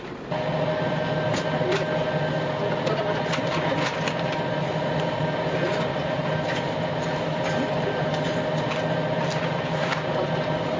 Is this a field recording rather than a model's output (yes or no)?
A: yes